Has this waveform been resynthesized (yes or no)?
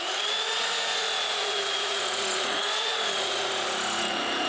yes